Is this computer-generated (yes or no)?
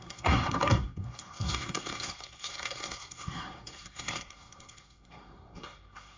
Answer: yes